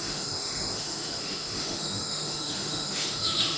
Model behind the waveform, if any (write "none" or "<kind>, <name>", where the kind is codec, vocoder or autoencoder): autoencoder, DAC-VAE